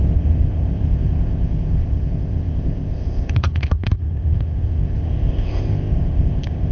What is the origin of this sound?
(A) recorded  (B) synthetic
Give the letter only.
B